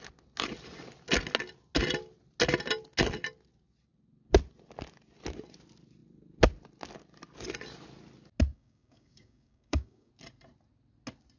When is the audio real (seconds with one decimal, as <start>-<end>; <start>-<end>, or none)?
0.0-8.5; 10.1-11.4